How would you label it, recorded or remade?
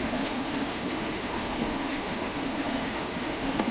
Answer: remade